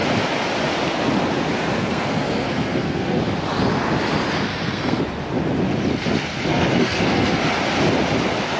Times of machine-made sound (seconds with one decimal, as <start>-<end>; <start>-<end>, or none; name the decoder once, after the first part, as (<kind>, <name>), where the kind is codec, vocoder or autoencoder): 1.8-3.2 (codec, SNAC); 4.5-5.0; 6.5-7.4

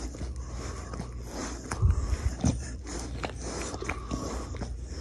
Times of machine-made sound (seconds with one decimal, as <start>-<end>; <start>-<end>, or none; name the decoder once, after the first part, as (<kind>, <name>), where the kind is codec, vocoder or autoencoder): none

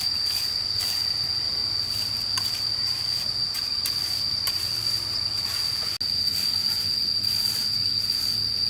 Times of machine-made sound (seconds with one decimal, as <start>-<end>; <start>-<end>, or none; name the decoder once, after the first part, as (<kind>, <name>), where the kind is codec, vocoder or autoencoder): none

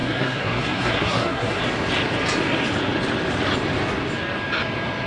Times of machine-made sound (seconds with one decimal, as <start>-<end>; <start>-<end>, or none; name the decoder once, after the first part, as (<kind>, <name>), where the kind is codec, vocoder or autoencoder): 0.0-1.6 (codec, SNAC)

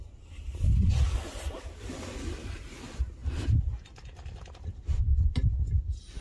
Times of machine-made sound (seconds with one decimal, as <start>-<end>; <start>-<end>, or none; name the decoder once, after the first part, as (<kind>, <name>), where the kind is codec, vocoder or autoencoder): none